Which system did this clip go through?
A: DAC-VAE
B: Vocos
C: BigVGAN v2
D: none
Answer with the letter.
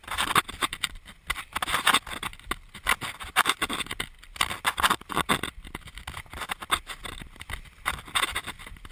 D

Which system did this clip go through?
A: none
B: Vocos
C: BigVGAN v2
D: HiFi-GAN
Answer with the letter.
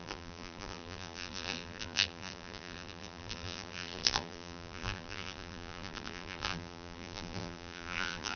C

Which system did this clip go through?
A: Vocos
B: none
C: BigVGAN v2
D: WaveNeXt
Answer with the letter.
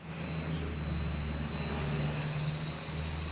B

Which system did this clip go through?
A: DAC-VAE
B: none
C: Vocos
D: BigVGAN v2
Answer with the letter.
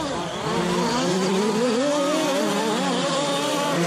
B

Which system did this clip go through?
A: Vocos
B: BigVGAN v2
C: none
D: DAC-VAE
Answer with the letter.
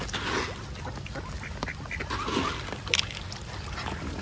C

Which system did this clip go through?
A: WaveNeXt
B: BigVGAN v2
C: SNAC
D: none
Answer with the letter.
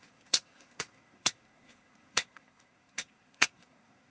C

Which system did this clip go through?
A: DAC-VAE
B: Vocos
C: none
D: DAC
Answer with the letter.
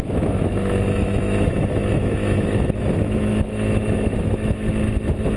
A